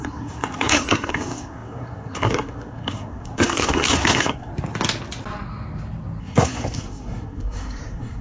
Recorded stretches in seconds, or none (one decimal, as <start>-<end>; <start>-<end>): 4.5-6.2